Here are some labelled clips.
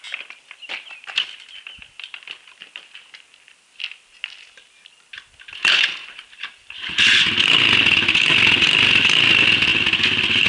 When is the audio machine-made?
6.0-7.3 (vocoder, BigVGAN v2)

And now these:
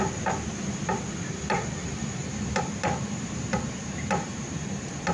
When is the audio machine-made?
1.8-4.5 (vocoder, BigVGAN v2)